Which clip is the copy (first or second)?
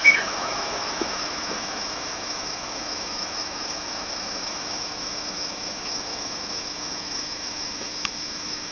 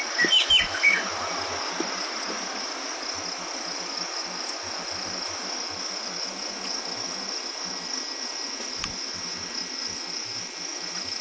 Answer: first